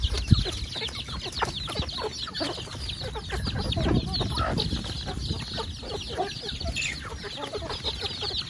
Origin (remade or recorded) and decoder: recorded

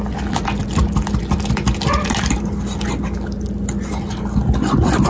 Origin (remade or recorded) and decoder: recorded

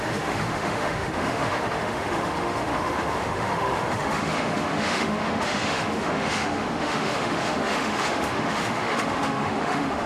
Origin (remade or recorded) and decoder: remade, autoencoder, DAC-VAE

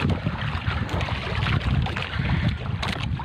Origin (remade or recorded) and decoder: recorded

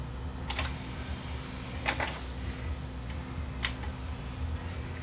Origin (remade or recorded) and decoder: recorded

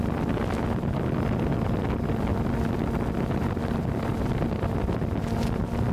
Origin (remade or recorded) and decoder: recorded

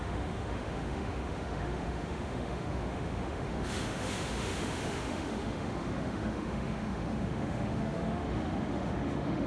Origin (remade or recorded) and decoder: remade, autoencoder, DAC-VAE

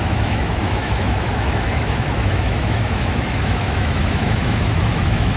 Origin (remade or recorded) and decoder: remade, autoencoder, DAC-VAE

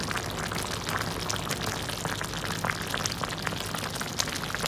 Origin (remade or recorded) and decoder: recorded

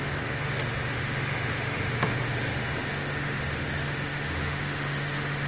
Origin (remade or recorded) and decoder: remade, autoencoder, DAC-VAE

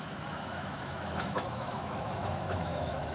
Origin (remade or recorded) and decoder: remade, autoencoder, DAC-VAE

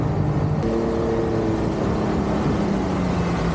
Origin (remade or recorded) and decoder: recorded